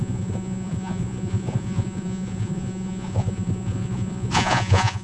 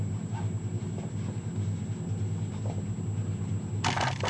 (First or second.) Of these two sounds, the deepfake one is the first